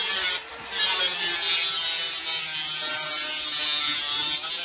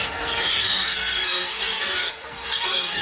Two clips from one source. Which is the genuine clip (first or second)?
first